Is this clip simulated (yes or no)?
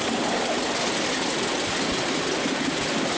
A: no